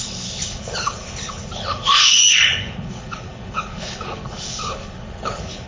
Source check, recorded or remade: remade